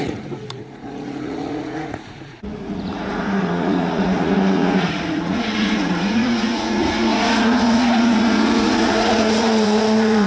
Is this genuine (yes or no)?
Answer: no